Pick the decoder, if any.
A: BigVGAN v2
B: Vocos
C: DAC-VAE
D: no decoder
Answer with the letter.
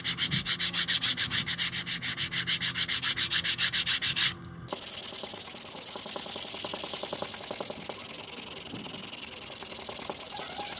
D